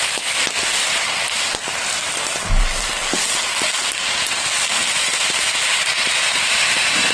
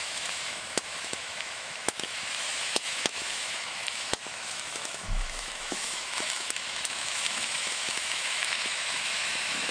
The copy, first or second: second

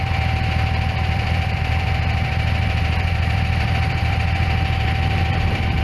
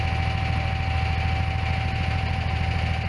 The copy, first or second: first